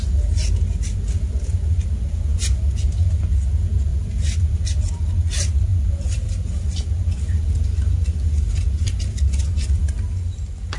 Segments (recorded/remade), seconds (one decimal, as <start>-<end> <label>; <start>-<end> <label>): 0.0-2.3 recorded; 2.3-3.2 remade; 3.2-3.9 recorded; 3.9-4.8 remade; 4.8-5.7 recorded; 5.7-9.0 remade; 9.0-9.8 recorded; 9.8-10.8 remade